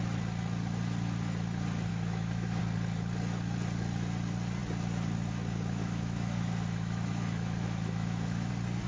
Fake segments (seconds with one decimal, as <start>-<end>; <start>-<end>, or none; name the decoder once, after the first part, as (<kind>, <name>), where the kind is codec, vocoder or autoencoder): 1.9-2.6 (autoencoder, DAC-VAE); 5.8-8.5